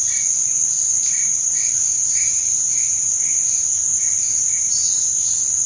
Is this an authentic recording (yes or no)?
yes